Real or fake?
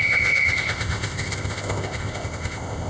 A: fake